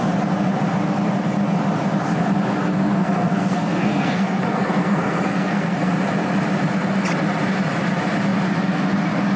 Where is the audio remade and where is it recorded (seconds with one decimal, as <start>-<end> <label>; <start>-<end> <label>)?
0.0-2.6 recorded; 2.6-5.9 remade; 5.9-9.4 recorded